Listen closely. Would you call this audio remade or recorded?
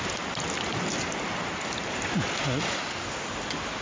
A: recorded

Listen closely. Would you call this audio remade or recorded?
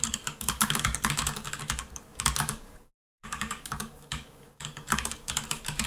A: remade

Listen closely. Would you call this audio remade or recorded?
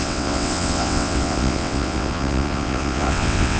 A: remade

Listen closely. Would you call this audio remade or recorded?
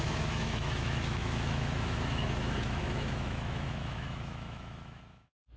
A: remade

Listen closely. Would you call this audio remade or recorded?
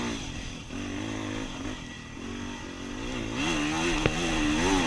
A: recorded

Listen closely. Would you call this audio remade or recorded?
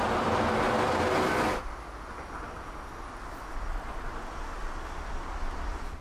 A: recorded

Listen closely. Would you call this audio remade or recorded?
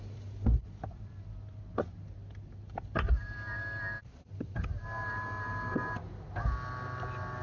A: recorded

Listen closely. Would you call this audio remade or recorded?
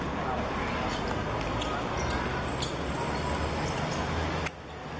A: recorded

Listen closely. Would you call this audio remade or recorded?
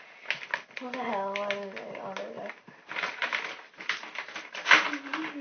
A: recorded